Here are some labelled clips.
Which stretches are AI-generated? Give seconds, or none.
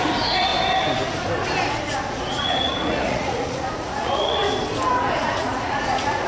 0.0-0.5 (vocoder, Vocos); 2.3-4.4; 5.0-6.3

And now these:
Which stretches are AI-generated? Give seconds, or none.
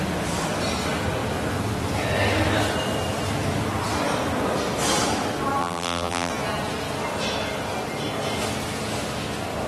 5.6-6.3 (vocoder, BigVGAN v2)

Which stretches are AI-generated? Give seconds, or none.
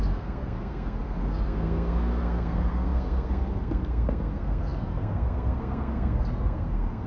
0.0-7.1 (codec, SNAC)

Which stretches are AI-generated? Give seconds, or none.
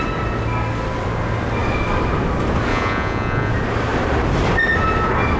2.7-3.5 (vocoder, Vocos)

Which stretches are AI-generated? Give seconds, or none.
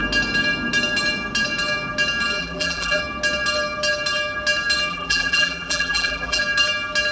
2.4-3.0 (vocoder, BigVGAN v2); 4.9-6.4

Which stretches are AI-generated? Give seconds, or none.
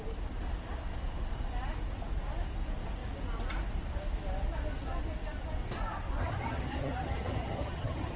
6.2-8.2 (vocoder, HiFi-GAN)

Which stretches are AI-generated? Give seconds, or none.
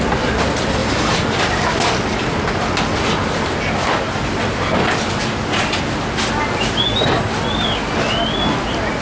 0.8-1.4 (vocoder, BigVGAN v2)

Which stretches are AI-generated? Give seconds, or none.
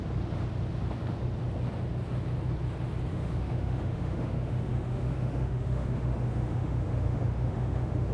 3.1-8.1 (autoencoder, DAC-VAE)